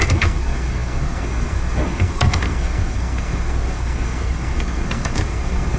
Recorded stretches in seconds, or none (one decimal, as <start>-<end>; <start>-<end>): none